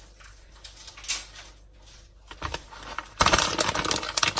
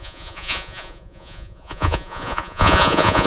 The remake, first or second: second